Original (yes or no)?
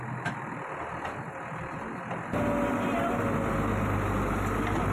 yes